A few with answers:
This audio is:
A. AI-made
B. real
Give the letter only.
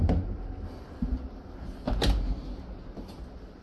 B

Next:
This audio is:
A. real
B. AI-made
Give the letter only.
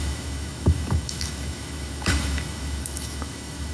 B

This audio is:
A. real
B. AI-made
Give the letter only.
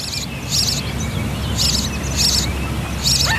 A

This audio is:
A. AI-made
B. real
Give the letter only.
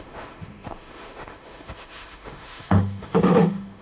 A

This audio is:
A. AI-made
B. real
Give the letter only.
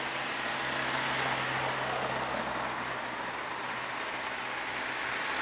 B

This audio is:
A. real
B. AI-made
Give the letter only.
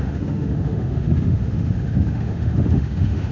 B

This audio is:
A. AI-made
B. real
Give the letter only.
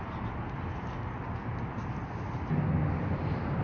B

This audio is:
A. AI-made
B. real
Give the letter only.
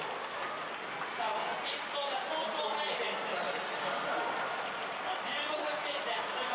B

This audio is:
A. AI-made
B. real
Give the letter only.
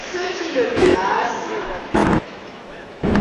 A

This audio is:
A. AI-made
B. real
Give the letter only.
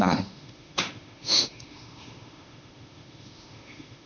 A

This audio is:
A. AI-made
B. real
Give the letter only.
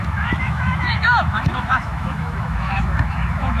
A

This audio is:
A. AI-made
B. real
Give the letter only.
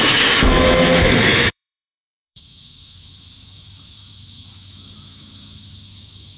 A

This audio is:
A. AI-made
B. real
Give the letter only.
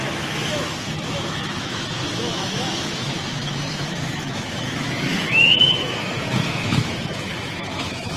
A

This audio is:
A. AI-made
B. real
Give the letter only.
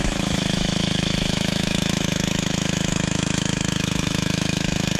A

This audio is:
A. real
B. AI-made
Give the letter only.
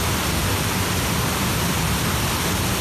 A